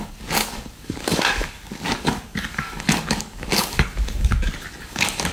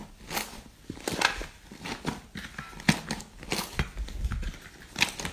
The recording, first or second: second